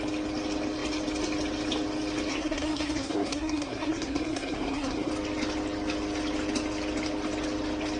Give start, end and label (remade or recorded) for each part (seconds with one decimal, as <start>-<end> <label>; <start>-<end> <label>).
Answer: 0.0-2.3 recorded; 2.3-5.1 remade; 5.1-8.0 recorded